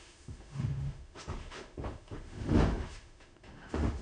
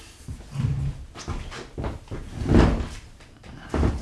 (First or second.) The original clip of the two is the second